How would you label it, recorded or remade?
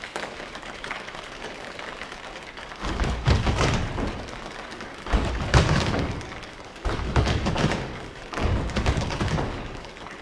remade